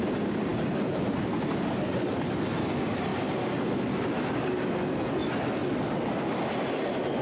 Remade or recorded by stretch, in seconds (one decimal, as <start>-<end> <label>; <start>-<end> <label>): 0.0-3.1 remade; 3.1-5.1 recorded; 5.1-5.6 remade; 5.6-6.5 recorded; 6.5-7.2 remade